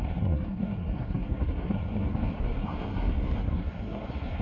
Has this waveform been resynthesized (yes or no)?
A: yes